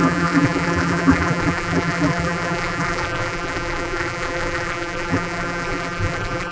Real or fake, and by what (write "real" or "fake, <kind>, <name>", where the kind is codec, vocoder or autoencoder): fake, vocoder, BigVGAN v2